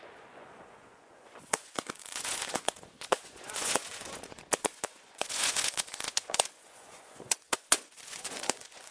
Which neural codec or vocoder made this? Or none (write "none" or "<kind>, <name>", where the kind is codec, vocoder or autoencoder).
vocoder, Vocos